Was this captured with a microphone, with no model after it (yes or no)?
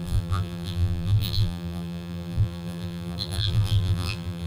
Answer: no